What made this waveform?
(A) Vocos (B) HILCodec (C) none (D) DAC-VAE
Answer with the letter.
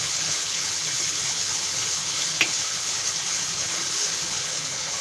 B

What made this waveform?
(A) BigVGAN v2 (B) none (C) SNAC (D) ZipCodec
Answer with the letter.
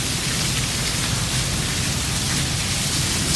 B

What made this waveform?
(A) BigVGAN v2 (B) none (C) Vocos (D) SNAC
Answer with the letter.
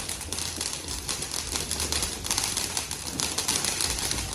B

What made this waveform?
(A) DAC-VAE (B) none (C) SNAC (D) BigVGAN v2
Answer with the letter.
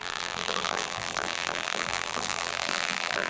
D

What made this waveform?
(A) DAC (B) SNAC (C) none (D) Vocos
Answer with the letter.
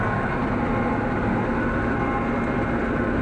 C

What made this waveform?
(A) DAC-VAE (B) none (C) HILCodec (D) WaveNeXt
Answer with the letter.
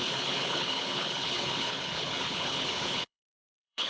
C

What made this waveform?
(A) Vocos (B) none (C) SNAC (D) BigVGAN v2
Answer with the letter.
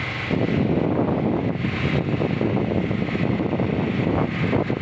B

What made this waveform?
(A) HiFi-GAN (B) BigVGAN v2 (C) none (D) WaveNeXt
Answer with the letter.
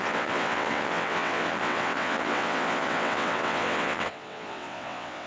D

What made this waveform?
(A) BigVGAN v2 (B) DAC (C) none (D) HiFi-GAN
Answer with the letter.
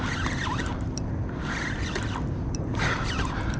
C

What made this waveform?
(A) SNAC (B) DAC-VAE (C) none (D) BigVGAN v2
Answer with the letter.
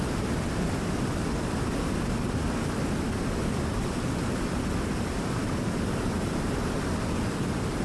C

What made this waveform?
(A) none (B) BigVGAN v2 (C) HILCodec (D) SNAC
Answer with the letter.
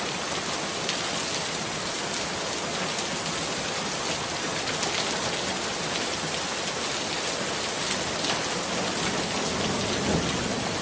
A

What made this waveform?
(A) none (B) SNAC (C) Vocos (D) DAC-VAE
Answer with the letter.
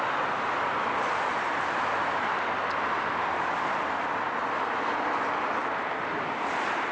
A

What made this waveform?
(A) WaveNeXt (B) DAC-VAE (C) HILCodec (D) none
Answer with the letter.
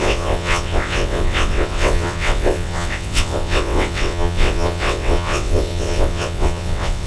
A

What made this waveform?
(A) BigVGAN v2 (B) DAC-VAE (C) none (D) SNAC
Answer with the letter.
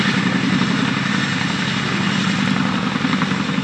C